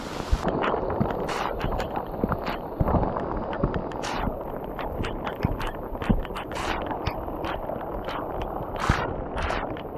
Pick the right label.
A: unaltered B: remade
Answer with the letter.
A